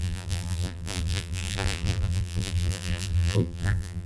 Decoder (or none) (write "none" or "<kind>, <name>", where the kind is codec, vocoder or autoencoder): vocoder, BigVGAN v2